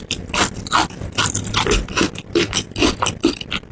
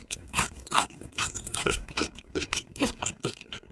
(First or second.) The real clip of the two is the first